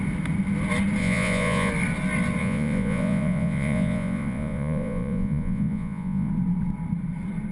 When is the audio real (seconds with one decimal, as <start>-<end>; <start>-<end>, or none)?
0.0-1.0; 1.7-2.4; 6.3-7.5